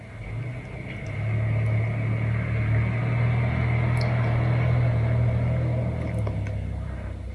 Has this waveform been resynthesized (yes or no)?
no